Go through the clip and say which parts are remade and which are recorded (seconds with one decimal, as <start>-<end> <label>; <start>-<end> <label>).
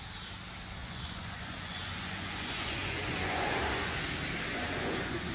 0.0-0.8 recorded; 0.8-4.0 remade; 4.0-4.5 recorded; 4.5-5.3 remade